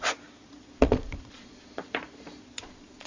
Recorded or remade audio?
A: remade